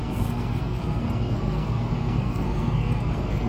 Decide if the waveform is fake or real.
fake